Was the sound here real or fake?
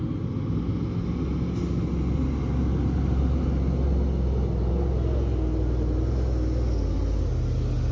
real